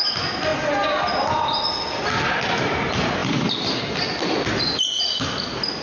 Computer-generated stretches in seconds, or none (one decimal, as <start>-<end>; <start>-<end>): none